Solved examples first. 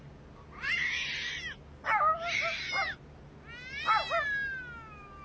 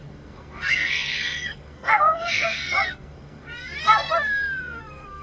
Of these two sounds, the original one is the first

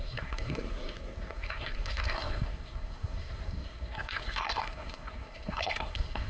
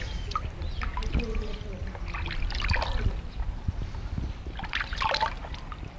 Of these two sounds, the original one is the second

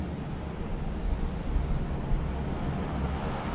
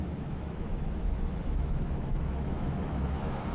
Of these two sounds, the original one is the first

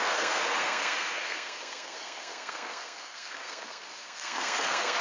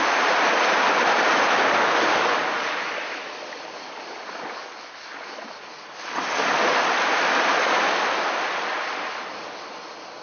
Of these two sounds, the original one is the second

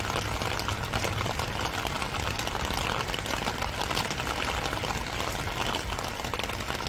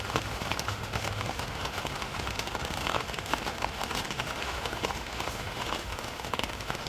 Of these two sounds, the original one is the first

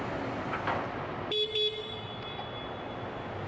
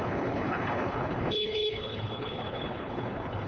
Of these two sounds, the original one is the first